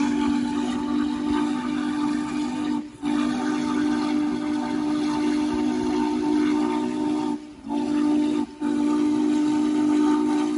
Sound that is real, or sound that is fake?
real